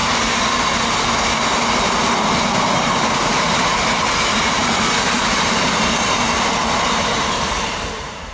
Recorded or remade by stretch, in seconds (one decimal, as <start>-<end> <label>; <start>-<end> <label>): 0.0-2.4 recorded; 2.4-4.6 remade; 4.6-6.6 recorded; 6.6-8.3 remade